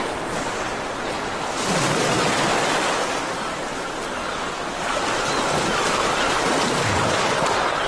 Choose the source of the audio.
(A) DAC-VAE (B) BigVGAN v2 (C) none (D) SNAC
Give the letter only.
C